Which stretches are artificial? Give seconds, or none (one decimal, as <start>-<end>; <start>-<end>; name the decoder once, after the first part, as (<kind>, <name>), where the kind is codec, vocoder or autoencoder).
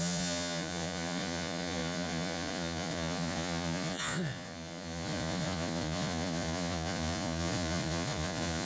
0.0-8.7 (vocoder, Vocos)